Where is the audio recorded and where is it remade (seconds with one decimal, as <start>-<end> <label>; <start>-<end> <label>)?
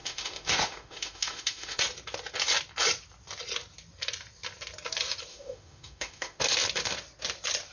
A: 0.0-1.8 remade; 1.8-5.3 recorded; 5.3-6.4 remade; 6.4-7.7 recorded